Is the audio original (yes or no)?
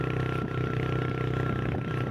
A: yes